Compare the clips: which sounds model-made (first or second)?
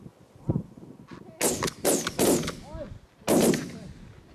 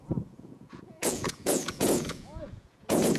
second